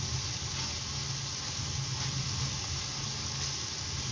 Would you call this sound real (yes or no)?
yes